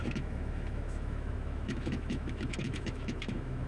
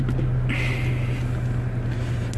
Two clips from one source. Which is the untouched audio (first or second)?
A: second